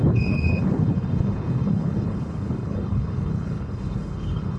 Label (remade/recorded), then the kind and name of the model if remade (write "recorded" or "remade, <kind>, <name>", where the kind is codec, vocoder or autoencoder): remade, codec, HILCodec